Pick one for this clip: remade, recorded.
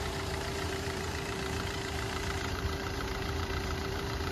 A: remade